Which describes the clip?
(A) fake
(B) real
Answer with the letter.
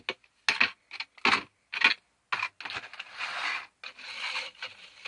B